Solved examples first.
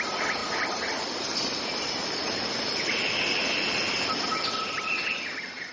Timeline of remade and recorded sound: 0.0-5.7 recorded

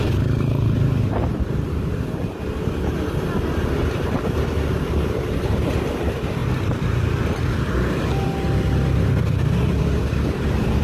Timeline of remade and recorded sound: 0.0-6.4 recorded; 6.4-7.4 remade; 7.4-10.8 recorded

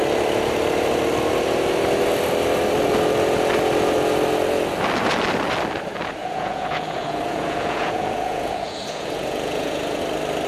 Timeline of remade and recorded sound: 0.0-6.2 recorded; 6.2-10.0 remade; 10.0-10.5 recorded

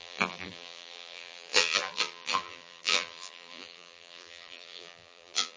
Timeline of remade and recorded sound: 0.0-5.6 remade

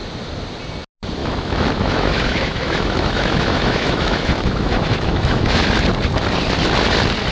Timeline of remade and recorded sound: 0.0-1.2 recorded; 1.2-5.6 remade; 5.6-7.3 recorded

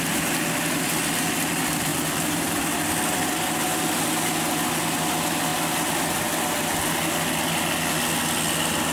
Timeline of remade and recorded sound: 0.0-1.9 recorded; 1.9-3.0 remade; 3.0-8.9 recorded

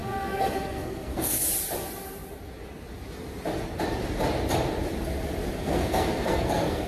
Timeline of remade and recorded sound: 0.0-1.4 remade; 1.4-5.5 recorded; 5.5-6.9 remade